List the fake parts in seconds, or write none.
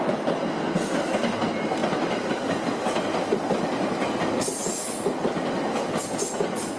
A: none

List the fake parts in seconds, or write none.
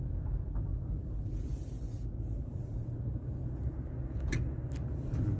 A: 0.7-3.9 (vocoder, BigVGAN v2)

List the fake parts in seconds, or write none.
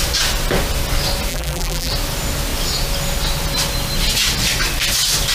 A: 1.3-1.9 (vocoder, BigVGAN v2)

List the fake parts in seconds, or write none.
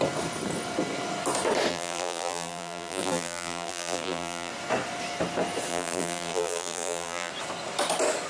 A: 1.7-4.5 (vocoder, BigVGAN v2); 5.7-7.3